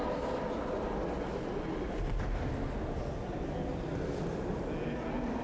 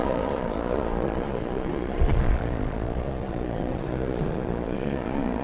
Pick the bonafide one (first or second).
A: first